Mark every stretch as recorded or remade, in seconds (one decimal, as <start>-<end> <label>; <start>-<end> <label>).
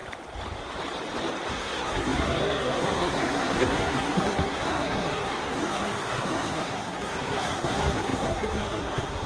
0.0-1.5 recorded; 1.5-9.3 remade